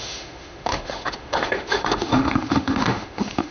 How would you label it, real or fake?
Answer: fake